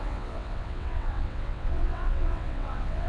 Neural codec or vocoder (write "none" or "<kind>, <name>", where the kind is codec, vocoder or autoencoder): vocoder, WaveNeXt